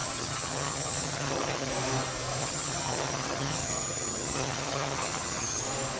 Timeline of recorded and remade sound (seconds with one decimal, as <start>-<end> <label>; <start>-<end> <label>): 0.0-1.7 remade; 1.7-2.4 recorded; 2.4-5.6 remade; 5.6-6.0 recorded

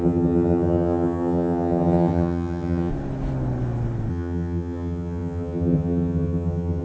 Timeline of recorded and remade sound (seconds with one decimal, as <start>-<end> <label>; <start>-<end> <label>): 0.0-2.9 remade; 2.9-4.1 recorded; 4.1-6.8 remade

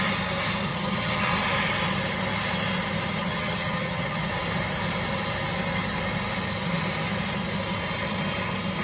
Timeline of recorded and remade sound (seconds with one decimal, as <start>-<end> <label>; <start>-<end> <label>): 0.0-0.7 recorded; 0.7-1.3 remade; 1.3-3.2 recorded; 3.2-4.3 remade; 4.3-8.8 recorded

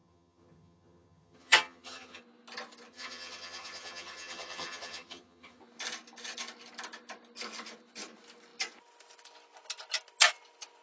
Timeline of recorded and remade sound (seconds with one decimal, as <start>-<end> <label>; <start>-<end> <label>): 0.0-2.2 remade; 2.2-2.9 recorded; 2.9-5.6 remade; 5.6-10.8 recorded

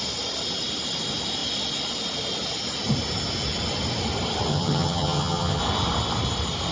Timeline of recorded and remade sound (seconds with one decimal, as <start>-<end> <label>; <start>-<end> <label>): 0.0-4.5 recorded; 4.5-5.6 remade; 5.6-6.7 recorded

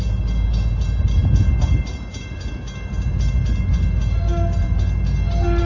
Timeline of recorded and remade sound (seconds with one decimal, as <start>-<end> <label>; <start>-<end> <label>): 0.0-5.7 recorded

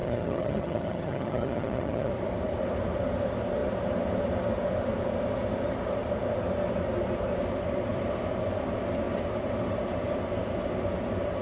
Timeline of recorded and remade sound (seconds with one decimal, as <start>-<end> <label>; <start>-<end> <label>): 0.0-2.1 remade; 2.1-11.4 recorded

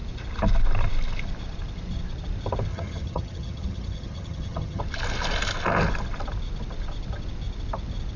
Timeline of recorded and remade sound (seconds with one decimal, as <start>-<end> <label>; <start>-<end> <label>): 0.0-2.7 recorded; 2.7-4.8 remade; 4.8-8.2 recorded